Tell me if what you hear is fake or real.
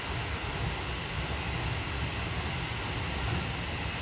real